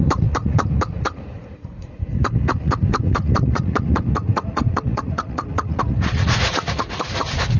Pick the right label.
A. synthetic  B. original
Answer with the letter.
A